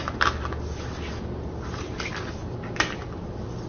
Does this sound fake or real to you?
real